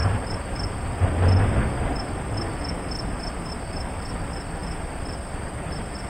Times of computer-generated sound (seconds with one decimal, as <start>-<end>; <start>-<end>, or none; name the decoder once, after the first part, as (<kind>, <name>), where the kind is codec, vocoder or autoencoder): 3.5-6.1 (vocoder, BigVGAN v2)